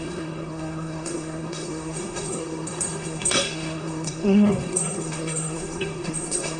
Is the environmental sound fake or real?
fake